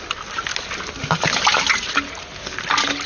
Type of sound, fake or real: real